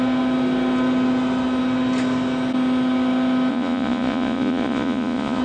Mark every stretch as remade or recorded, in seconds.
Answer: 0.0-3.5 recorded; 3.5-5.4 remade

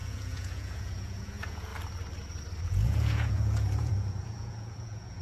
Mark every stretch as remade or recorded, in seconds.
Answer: 0.0-1.7 remade; 1.7-2.6 recorded; 2.6-5.2 remade

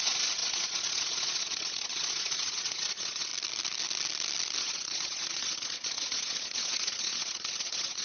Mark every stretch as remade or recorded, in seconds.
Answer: 0.0-3.3 remade; 3.3-4.6 recorded; 4.6-8.0 remade